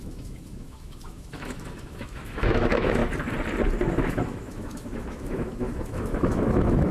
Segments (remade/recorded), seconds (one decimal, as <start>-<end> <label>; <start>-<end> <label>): 0.0-3.0 remade; 3.0-3.9 recorded; 3.9-6.9 remade